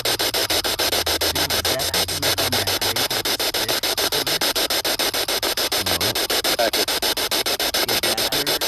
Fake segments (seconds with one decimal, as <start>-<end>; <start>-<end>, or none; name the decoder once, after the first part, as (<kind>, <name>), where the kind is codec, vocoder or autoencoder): none